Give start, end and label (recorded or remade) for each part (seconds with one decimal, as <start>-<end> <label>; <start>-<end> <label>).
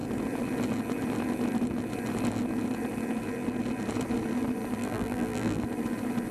0.0-4.8 recorded; 4.8-5.6 remade; 5.6-6.3 recorded